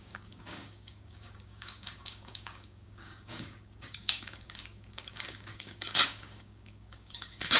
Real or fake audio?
fake